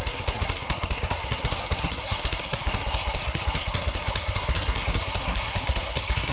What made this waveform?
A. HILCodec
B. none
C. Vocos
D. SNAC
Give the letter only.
D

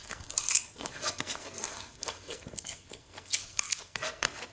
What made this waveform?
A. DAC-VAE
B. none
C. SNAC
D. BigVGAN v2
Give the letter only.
C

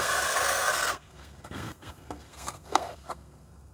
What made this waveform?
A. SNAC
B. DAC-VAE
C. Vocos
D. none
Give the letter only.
A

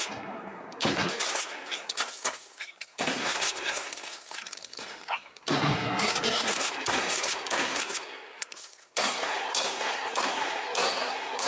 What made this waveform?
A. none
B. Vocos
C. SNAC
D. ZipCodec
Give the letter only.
C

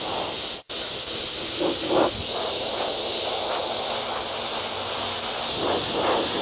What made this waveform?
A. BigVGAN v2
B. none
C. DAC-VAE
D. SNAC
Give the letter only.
B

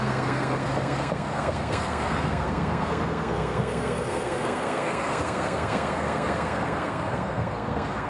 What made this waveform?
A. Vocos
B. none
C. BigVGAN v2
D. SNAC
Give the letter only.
D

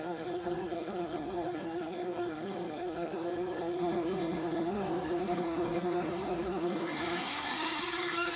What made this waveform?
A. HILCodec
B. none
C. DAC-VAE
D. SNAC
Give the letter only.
D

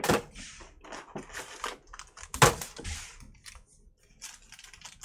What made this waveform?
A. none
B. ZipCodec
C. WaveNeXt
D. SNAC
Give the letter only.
A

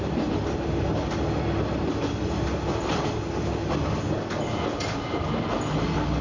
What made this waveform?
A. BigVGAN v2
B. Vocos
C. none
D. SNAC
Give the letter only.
C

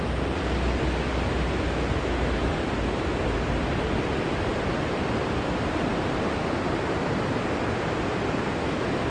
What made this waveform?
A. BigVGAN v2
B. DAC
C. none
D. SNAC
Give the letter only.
C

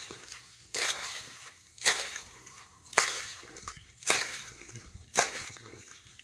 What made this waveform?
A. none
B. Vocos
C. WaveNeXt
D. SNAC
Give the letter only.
D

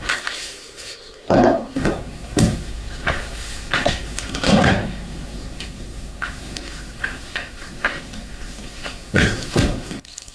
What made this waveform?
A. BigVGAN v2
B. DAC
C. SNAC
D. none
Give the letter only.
C